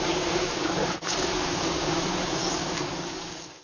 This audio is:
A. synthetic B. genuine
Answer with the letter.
A